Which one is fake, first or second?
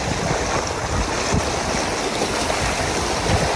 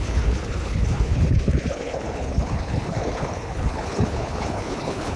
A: second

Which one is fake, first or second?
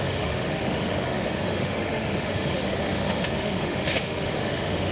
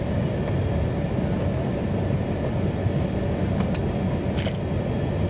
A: first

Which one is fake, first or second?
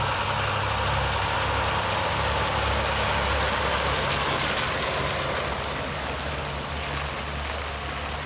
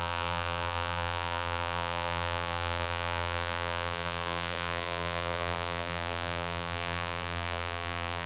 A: second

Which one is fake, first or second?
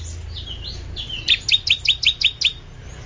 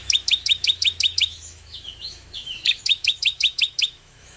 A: second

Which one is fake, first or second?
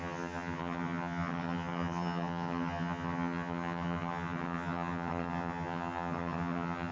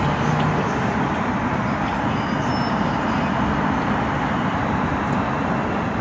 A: first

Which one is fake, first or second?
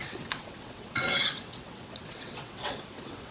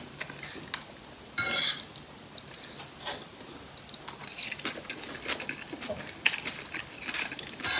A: first